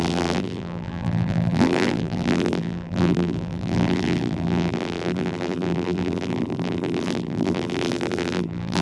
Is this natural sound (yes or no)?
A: no